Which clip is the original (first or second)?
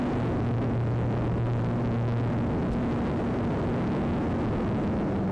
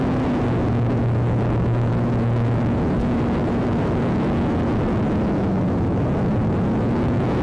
first